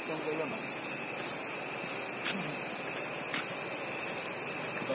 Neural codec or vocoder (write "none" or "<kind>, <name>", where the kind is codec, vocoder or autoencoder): none